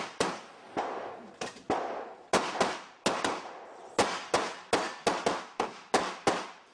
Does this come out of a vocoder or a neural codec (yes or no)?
no